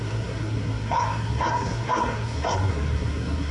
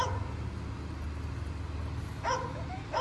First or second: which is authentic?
second